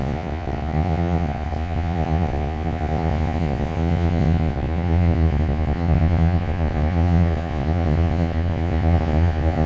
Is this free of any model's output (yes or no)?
no